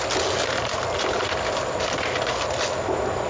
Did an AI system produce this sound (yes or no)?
no